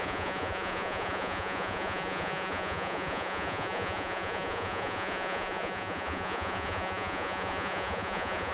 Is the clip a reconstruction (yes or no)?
yes